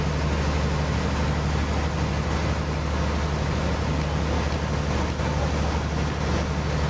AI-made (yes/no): no